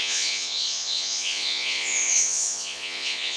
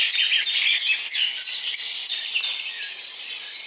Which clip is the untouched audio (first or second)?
second